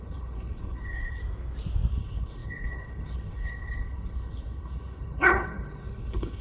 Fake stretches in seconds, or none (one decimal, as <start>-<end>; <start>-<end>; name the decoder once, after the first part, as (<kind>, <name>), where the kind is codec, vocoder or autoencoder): 0.0-1.2 (codec, HILCodec); 1.9-6.4